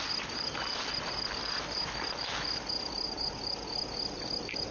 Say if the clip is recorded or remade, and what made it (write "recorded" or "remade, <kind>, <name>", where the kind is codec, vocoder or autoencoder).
recorded